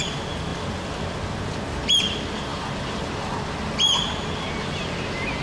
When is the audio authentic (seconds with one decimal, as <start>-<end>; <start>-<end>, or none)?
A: 0.0-5.4